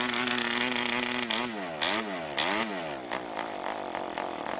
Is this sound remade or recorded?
recorded